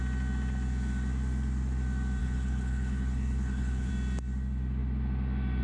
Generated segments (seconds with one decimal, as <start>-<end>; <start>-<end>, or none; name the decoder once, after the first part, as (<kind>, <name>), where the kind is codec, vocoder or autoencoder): 2.2-3.9 (codec, HILCodec)